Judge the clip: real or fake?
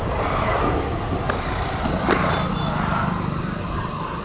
real